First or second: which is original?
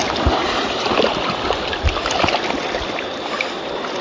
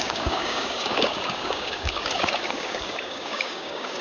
first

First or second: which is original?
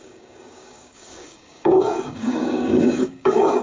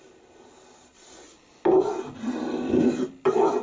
second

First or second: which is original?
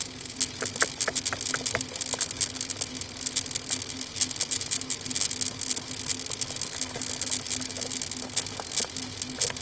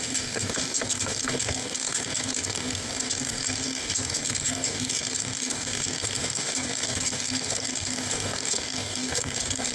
first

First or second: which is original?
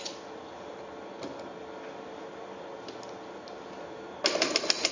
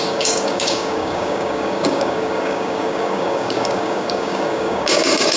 first